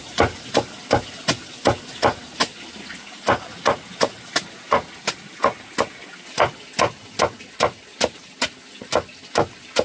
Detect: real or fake real